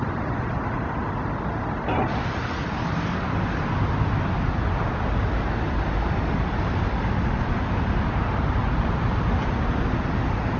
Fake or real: real